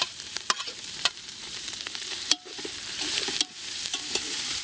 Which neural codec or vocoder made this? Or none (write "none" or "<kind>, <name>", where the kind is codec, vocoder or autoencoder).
vocoder, BigVGAN v2